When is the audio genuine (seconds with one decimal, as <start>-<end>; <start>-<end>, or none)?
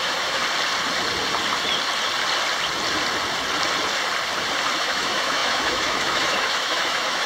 0.4-4.8